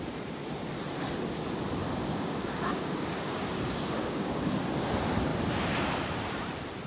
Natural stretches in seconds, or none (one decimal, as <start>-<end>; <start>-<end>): 0.0-2.0; 4.5-6.9